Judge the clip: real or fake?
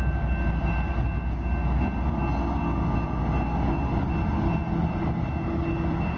real